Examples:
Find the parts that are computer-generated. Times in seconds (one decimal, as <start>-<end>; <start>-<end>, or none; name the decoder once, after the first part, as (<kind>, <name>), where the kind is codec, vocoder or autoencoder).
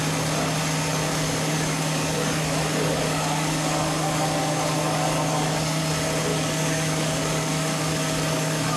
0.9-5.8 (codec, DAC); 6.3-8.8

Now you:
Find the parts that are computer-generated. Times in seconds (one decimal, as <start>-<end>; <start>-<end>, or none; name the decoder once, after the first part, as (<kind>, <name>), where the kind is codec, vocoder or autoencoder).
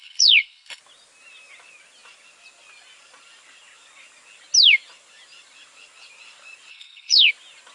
0.0-0.8 (codec, HILCodec); 6.7-7.3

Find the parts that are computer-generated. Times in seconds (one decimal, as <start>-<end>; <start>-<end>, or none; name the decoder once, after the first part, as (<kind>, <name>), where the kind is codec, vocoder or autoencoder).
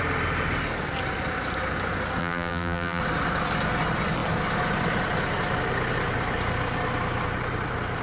2.2-3.0 (vocoder, BigVGAN v2)